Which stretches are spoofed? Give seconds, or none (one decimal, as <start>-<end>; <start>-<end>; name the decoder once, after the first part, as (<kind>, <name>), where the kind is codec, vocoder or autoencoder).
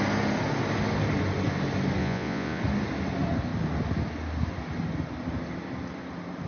2.0-2.6 (vocoder, Vocos)